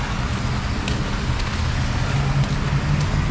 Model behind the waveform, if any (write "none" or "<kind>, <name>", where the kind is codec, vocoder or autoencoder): none